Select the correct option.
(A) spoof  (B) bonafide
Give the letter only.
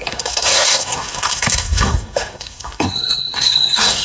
A